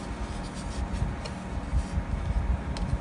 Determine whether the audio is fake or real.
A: real